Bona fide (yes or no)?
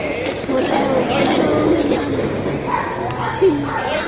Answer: yes